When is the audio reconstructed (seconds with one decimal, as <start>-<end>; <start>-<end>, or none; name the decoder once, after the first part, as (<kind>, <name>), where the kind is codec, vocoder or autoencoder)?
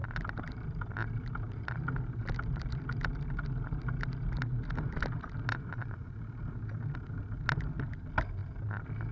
5.5-6.2 (vocoder, Vocos)